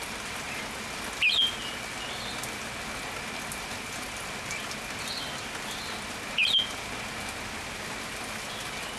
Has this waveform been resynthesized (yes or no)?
no